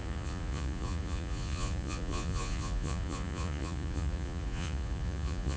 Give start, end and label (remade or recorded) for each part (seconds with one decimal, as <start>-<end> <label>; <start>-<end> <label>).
0.0-5.6 remade